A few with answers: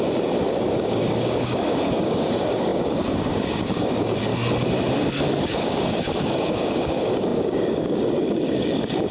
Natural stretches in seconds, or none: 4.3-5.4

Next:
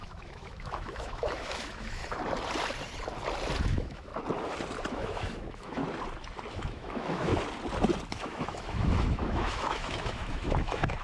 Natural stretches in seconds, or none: 2.0-3.6; 4.1-4.9; 5.8-6.5; 7.3-8.1